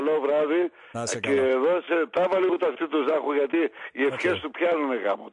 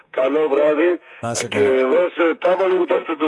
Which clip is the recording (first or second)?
first